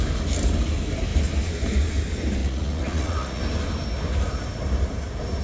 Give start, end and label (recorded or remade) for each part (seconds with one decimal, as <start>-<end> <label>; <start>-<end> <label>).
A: 0.0-2.4 recorded; 2.4-3.4 remade; 3.4-5.4 recorded